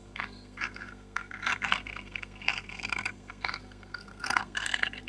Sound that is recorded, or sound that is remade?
remade